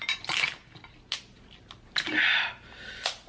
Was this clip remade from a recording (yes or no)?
no